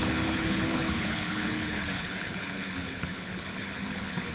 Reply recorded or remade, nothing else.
remade